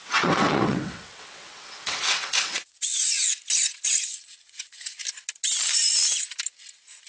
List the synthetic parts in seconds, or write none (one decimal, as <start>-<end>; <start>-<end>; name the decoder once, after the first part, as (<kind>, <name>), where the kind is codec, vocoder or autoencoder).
0.0-3.4 (vocoder, WaveNeXt); 4.0-5.0